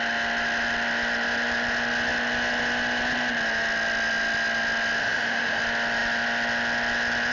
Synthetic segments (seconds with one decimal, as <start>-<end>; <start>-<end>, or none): 5.0-5.6